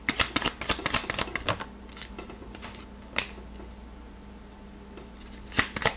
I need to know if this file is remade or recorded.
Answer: recorded